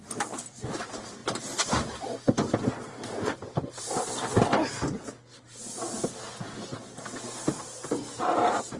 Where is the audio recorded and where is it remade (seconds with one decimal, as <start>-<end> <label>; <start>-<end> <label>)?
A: 0.0-1.2 remade; 1.2-2.8 recorded; 2.8-3.4 remade; 3.4-7.6 recorded; 7.6-8.8 remade

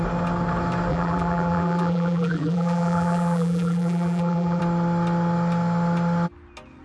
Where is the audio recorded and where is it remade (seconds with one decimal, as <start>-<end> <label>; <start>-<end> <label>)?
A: 0.0-0.9 recorded; 0.9-4.6 remade; 4.6-6.8 recorded

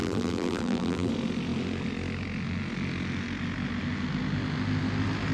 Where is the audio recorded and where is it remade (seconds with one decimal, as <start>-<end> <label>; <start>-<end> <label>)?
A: 0.0-1.1 remade; 1.1-5.3 recorded

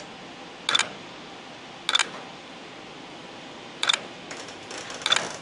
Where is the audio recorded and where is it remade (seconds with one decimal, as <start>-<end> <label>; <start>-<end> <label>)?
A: 0.0-0.8 recorded; 0.8-1.3 remade; 1.3-2.0 recorded; 2.0-2.7 remade; 2.7-3.2 recorded; 3.2-4.8 remade; 4.8-5.4 recorded

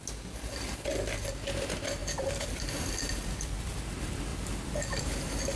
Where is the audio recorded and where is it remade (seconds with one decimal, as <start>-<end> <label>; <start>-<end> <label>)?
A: 0.0-2.0 recorded; 2.0-3.8 remade; 3.8-4.3 recorded; 4.3-5.0 remade; 5.0-5.6 recorded

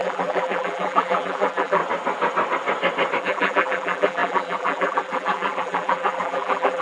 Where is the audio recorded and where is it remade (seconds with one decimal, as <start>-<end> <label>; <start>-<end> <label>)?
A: 0.0-1.8 remade; 1.8-3.2 recorded; 3.2-6.8 remade

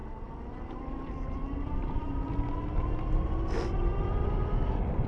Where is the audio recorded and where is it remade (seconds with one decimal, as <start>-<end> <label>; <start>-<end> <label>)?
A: 0.0-0.8 remade; 0.8-1.8 recorded; 1.8-2.3 remade; 2.3-5.1 recorded

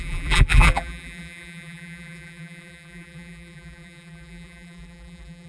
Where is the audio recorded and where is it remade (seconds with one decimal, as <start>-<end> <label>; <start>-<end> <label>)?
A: 0.0-5.5 remade